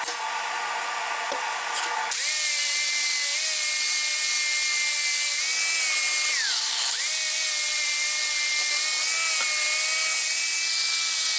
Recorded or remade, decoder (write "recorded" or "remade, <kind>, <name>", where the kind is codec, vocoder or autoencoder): recorded